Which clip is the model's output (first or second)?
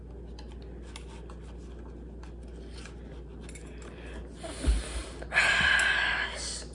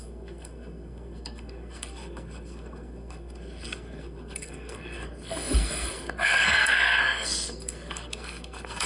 second